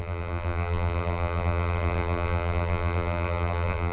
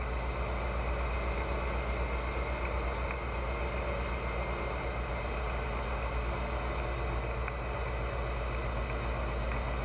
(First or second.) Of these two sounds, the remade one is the first